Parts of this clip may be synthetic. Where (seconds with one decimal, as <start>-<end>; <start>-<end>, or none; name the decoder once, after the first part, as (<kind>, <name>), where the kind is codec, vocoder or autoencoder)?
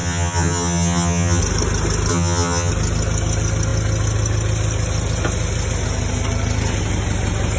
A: 0.0-1.4 (vocoder, HiFi-GAN); 2.1-2.7